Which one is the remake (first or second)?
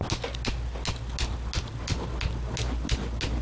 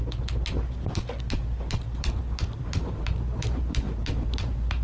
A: second